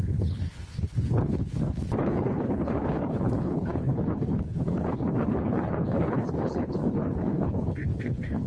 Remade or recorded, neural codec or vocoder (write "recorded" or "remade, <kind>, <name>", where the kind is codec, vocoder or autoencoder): remade, codec, HILCodec